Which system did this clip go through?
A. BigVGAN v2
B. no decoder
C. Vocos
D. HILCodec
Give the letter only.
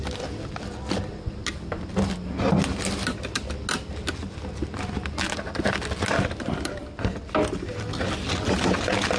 B